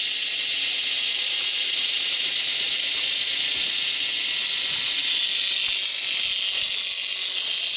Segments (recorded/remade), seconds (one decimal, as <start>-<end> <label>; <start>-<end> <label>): 0.0-0.5 recorded; 0.5-5.2 remade; 5.2-7.8 recorded